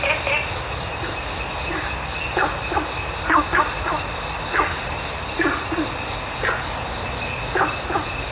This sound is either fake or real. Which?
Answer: real